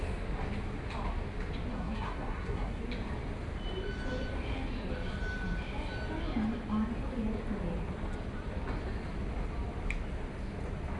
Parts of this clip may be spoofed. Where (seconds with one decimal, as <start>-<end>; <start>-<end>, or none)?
1.7-2.8